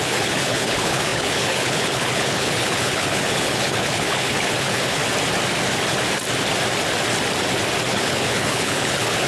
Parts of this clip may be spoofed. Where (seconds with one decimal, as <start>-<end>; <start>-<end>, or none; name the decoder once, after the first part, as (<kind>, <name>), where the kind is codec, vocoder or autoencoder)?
0.0-5.0 (codec, HILCodec); 7.9-9.3